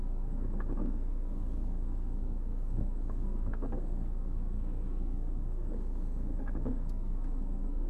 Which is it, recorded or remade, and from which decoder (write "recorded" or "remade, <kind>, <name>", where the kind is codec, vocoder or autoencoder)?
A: remade, codec, SNAC